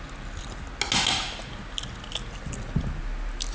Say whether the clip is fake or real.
real